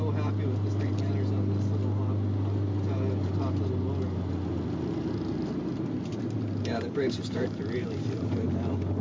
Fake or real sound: real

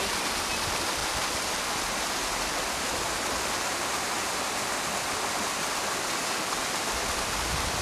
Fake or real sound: real